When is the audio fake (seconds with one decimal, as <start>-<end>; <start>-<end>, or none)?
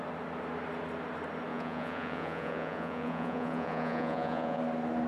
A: 1.5-4.6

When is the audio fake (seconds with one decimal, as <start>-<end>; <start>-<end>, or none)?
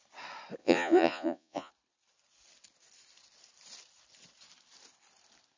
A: 0.6-1.7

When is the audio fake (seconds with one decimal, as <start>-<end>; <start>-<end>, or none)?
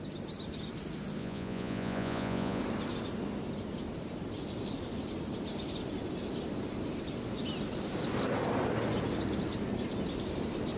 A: 1.2-2.6